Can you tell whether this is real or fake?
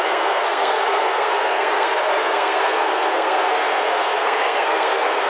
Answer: fake